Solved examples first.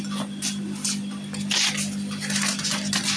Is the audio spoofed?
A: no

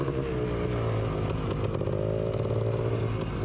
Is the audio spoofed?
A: no